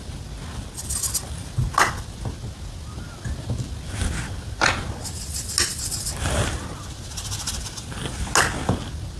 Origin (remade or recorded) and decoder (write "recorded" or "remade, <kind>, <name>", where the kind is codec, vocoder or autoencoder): recorded